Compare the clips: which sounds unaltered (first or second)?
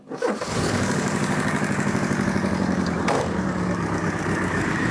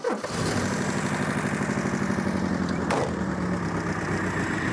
second